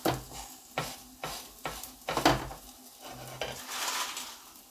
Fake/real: real